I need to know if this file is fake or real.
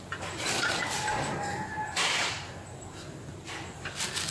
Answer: real